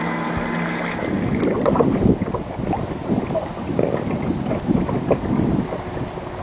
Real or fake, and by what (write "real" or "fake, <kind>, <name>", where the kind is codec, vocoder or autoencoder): real